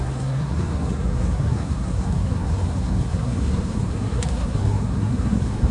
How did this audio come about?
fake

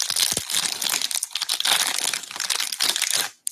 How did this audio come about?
real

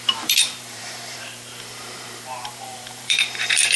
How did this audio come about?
fake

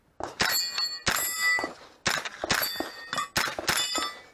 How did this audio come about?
real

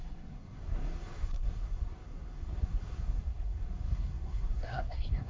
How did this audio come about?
fake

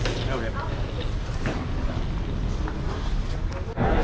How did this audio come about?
real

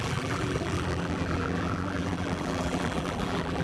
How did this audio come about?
fake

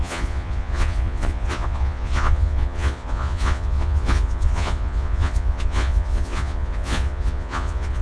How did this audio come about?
fake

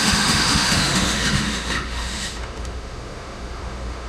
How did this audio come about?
fake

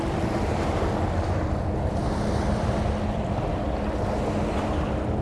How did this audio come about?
real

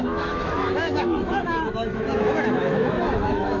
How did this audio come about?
fake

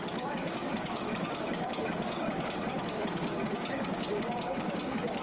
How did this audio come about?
fake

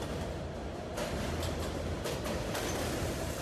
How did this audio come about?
real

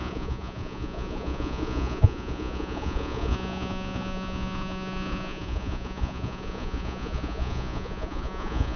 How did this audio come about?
fake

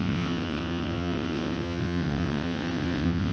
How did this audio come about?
fake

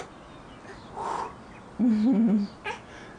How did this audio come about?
real